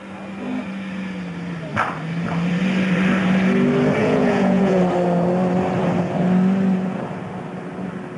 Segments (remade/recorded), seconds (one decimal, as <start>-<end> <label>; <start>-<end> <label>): 0.0-4.0 recorded; 4.0-4.8 remade; 4.8-8.2 recorded